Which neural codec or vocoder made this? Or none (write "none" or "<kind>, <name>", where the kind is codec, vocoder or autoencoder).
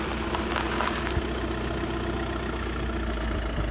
vocoder, BigVGAN v2